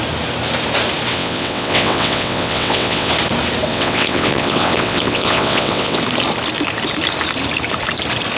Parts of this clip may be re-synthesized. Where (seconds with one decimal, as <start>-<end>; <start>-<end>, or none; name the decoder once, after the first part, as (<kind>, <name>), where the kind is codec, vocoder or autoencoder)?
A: 1.1-3.1 (vocoder, WaveNeXt); 3.7-6.0